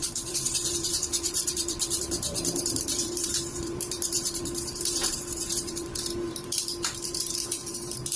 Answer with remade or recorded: remade